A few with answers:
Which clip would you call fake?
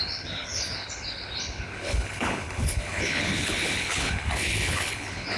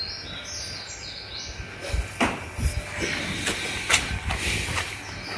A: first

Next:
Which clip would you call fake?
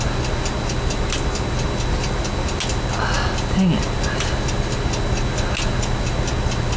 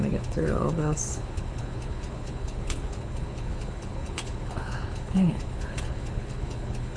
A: second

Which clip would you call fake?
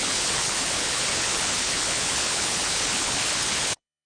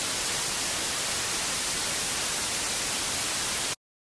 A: first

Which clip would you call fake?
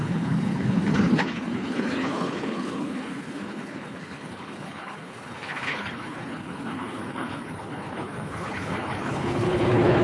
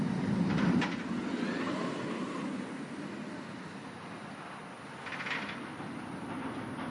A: first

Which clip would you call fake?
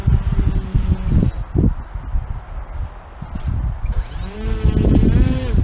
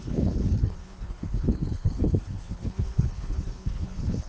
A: second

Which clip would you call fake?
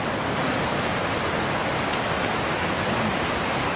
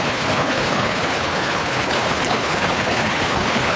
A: second